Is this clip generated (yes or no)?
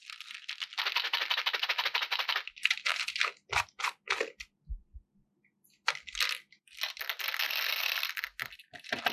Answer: no